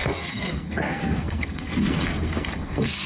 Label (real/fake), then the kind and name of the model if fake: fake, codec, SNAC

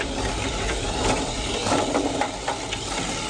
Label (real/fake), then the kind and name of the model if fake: real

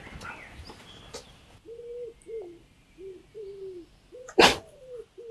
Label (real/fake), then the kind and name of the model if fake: real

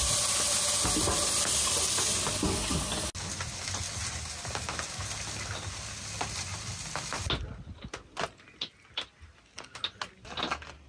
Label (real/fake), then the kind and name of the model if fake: real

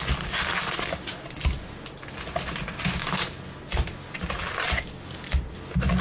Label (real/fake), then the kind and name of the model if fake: real